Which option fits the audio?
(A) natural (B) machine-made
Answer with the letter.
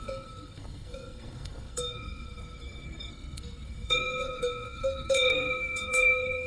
B